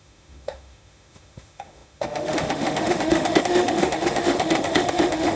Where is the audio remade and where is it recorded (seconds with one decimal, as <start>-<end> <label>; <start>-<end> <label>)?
0.0-5.4 remade